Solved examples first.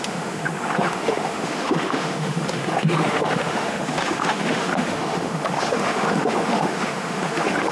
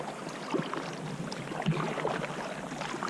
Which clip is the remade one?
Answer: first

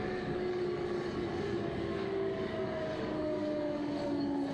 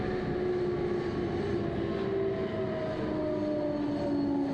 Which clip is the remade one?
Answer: first